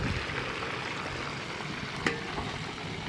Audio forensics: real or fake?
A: real